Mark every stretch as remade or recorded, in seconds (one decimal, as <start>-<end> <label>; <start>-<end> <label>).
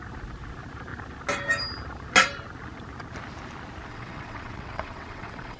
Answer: 0.0-3.9 recorded; 3.9-5.6 remade